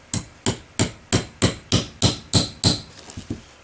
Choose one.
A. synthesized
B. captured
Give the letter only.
B